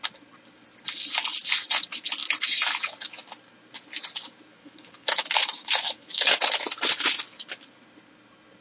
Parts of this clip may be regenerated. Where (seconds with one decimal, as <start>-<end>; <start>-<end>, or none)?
4.5-6.4